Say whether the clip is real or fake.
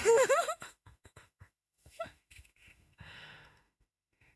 fake